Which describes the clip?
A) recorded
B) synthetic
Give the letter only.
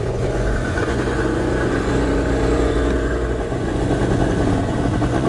B